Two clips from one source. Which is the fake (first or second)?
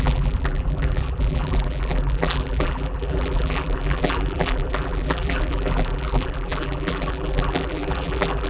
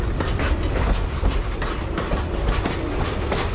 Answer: first